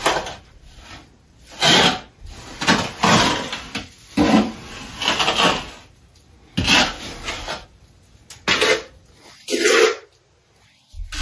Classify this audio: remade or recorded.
recorded